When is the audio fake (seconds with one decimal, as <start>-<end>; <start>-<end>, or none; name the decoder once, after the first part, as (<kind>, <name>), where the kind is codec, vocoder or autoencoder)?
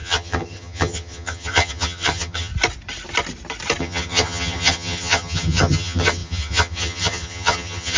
0.0-2.5 (vocoder, HiFi-GAN); 3.8-8.0